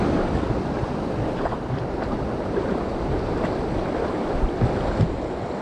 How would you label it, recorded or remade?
recorded